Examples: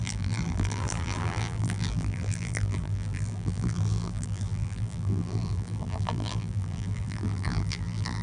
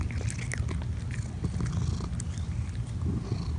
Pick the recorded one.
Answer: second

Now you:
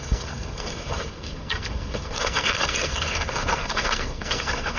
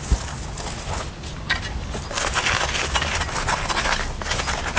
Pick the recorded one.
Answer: second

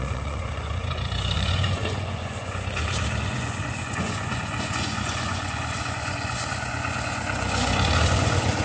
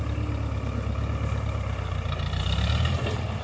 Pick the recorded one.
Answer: second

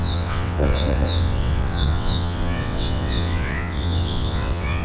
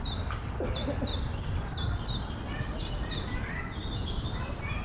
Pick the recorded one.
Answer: second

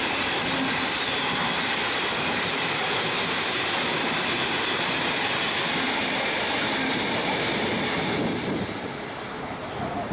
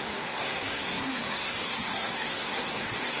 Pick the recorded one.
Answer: first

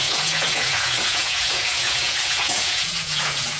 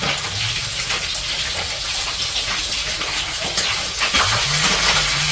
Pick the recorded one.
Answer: second